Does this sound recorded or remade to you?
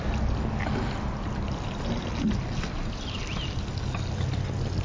recorded